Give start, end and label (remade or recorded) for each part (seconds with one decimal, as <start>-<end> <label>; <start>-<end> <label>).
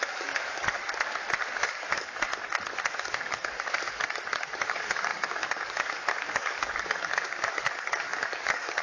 0.0-0.8 remade; 0.8-1.6 recorded; 1.6-2.3 remade; 2.3-2.9 recorded; 2.9-8.8 remade